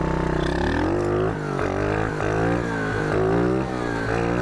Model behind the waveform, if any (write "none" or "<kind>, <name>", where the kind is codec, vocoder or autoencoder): none